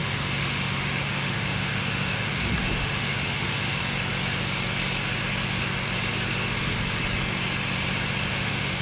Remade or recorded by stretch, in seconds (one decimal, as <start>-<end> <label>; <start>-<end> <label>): 0.0-3.8 remade; 3.8-8.3 recorded; 8.3-8.8 remade